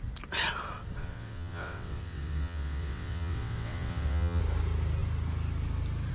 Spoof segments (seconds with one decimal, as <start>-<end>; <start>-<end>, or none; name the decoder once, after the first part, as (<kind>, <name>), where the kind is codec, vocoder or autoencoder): 1.0-4.4 (vocoder, WaveNeXt)